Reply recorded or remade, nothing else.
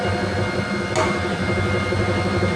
recorded